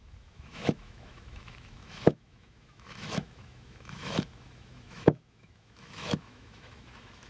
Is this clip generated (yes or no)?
yes